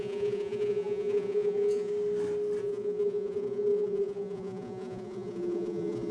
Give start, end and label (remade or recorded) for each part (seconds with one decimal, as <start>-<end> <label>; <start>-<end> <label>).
0.0-1.9 remade; 1.9-2.6 recorded; 2.6-6.1 remade